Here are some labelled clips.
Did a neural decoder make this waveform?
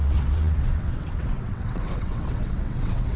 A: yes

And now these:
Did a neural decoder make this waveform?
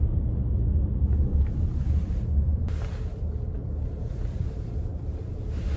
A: no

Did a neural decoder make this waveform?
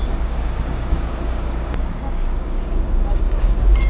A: yes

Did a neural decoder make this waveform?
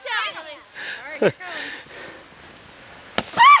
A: no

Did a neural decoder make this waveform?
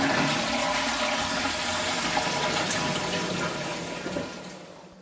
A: no